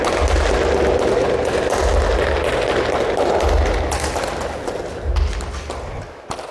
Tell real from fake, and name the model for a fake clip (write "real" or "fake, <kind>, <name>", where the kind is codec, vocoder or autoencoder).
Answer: real